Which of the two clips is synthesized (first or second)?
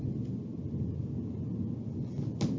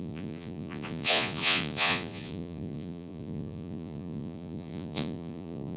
second